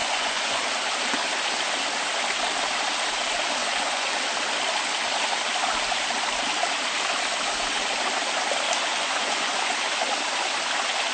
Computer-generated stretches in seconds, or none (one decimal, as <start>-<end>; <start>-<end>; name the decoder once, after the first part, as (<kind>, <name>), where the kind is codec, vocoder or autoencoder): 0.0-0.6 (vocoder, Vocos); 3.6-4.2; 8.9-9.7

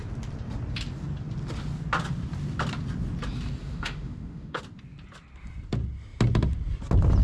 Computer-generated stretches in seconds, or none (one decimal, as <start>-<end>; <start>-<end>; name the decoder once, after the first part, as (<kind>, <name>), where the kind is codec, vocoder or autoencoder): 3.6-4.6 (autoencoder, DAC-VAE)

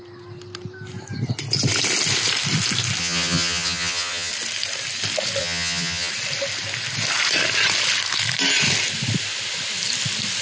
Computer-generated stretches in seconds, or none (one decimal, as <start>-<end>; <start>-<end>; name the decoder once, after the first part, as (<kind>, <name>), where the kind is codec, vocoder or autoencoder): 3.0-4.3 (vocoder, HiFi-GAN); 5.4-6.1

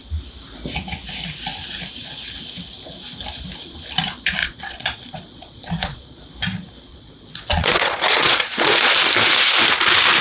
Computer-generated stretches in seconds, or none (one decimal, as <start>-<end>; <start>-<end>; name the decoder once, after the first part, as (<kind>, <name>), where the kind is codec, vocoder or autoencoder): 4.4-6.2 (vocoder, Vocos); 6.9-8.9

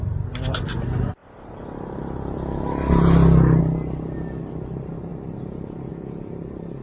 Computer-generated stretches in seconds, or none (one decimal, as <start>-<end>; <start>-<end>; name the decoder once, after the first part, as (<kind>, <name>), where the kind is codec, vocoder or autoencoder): none